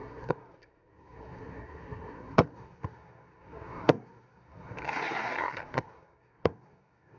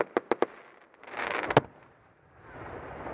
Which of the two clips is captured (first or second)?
second